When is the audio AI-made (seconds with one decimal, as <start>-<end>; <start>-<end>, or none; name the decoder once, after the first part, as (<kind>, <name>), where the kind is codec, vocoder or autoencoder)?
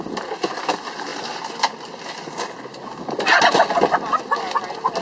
none